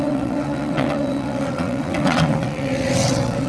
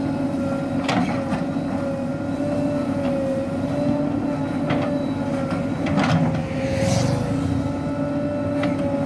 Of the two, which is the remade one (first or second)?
first